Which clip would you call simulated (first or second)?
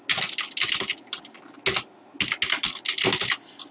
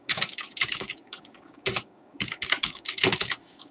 second